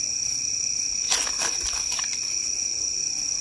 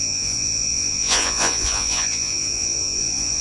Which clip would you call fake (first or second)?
second